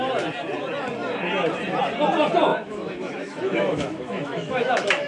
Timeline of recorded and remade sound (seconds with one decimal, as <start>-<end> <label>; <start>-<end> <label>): 0.0-2.5 recorded; 2.5-5.1 remade